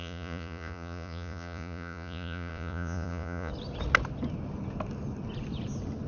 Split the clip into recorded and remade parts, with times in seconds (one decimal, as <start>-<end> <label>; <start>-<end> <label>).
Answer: 0.0-3.5 remade; 3.5-6.1 recorded